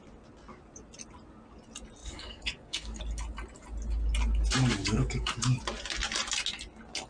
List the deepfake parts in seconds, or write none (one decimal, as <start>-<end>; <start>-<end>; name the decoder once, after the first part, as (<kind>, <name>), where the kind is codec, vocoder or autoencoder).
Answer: 2.0-3.0 (codec, DAC); 4.8-5.6